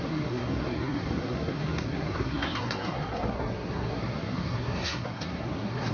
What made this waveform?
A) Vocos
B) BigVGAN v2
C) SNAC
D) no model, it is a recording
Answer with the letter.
C